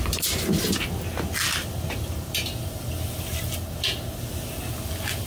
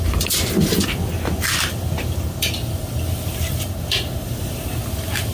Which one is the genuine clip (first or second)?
first